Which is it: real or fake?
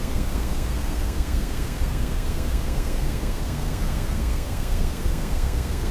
fake